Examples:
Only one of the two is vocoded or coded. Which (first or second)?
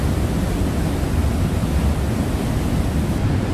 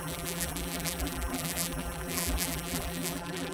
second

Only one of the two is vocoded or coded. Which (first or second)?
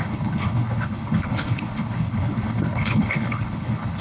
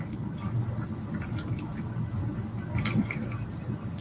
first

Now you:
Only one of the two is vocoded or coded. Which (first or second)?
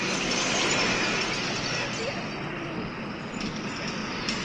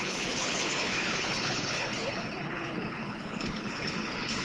second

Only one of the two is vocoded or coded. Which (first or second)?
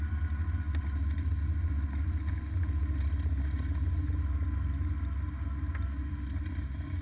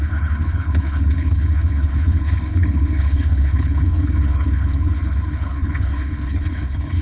second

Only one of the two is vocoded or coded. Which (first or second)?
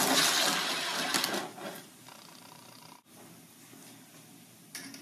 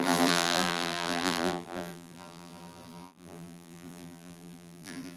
second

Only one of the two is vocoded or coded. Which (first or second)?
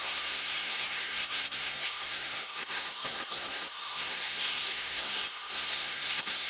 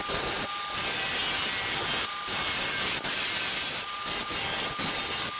first